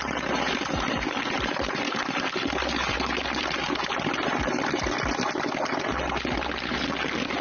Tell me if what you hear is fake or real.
real